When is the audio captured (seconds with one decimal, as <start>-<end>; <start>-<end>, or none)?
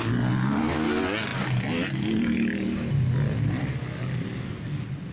0.0-5.1